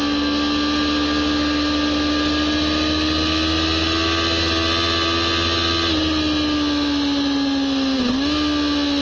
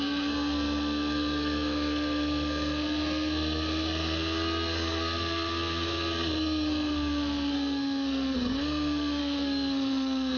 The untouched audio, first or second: first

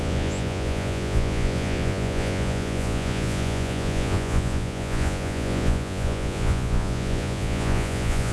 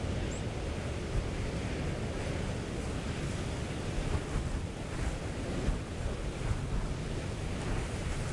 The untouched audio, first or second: second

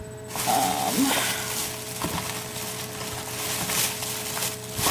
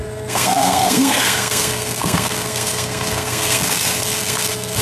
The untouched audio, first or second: first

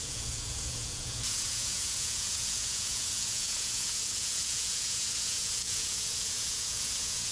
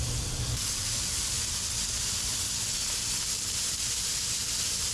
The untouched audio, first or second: second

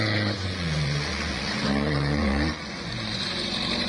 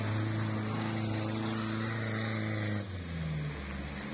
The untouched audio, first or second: second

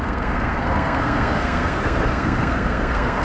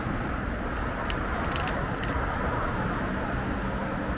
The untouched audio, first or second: second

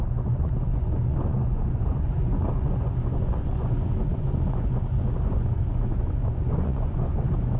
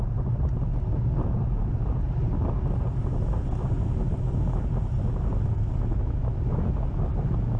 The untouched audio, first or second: second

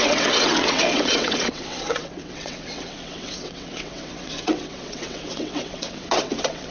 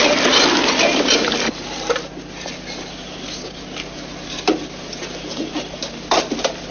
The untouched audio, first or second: second